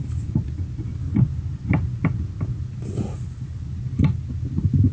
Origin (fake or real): real